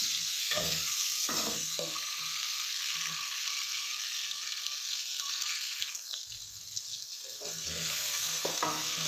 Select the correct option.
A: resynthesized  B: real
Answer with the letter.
A